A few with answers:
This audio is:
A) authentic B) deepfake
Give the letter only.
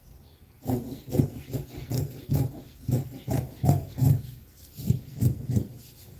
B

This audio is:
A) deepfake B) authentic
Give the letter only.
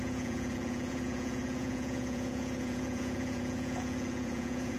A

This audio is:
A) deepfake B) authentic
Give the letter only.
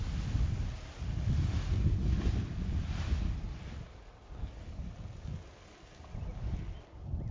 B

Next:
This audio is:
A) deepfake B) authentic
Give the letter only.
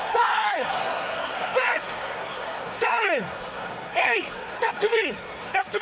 A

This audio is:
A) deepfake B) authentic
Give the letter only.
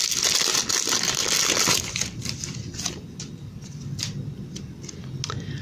B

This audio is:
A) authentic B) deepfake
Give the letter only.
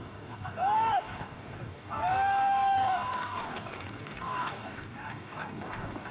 B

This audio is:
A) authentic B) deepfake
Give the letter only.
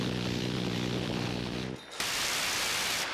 B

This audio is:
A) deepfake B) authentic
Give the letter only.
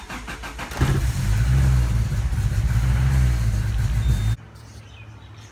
B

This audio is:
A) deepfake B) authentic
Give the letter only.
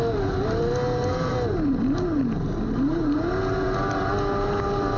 B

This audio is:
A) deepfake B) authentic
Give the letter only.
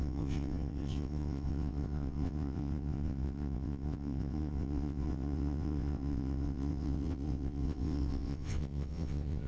A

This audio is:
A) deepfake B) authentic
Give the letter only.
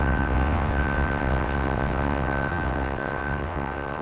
A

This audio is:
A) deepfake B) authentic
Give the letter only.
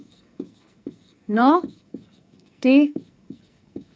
A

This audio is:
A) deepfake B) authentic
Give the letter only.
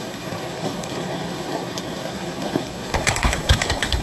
A